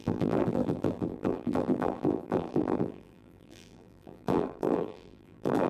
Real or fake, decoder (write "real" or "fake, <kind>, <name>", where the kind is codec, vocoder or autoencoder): fake, vocoder, BigVGAN v2